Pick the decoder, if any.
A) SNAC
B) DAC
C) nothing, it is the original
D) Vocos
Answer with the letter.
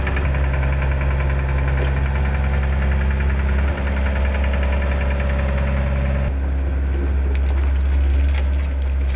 C